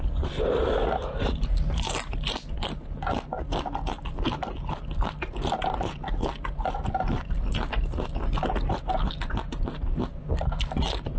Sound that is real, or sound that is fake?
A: real